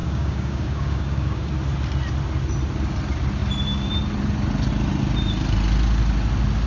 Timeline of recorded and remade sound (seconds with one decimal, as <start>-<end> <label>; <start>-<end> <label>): 0.0-1.5 remade; 1.5-6.7 recorded